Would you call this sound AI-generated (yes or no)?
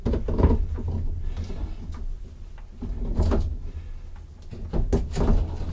no